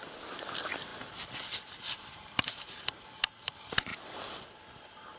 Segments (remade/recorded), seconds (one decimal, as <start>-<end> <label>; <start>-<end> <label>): 0.0-5.2 recorded